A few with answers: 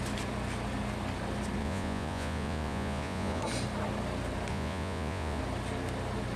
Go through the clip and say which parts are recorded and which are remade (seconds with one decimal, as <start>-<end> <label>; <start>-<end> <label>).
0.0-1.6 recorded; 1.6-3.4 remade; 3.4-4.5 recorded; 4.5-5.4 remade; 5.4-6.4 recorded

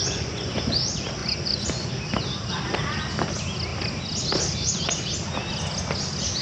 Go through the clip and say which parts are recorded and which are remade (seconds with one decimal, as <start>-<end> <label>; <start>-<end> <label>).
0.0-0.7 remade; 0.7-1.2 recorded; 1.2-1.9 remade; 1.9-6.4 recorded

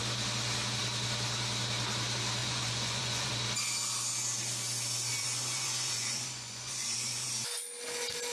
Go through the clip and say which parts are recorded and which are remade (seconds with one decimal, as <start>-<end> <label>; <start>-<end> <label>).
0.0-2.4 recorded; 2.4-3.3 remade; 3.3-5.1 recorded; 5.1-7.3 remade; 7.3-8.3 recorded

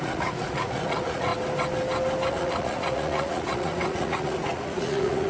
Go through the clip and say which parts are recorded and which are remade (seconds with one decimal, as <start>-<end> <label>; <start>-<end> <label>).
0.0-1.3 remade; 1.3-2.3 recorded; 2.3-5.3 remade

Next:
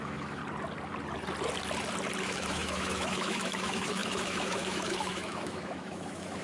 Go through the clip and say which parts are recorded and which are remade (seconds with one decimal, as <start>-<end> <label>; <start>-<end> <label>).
0.0-0.4 remade; 0.4-2.2 recorded; 2.2-6.4 remade

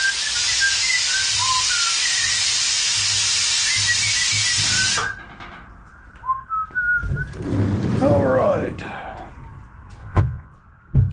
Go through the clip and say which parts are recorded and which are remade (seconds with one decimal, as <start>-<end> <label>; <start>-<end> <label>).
0.0-10.0 recorded; 10.0-10.5 remade; 10.5-11.1 recorded

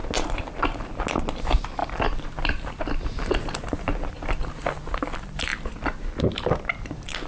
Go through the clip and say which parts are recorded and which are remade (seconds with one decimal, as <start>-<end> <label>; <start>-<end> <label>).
0.0-1.4 recorded; 1.4-5.5 remade; 5.5-6.2 recorded; 6.2-7.3 remade

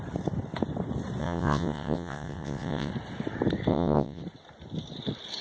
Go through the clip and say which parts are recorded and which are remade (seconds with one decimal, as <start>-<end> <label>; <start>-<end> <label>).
0.0-1.2 recorded; 1.2-2.9 remade; 2.9-3.7 recorded; 3.7-4.2 remade; 4.2-5.4 recorded